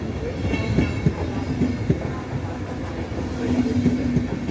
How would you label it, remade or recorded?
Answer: recorded